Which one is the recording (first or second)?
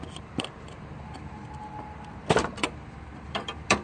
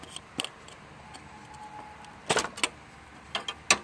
second